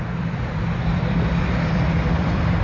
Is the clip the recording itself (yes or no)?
no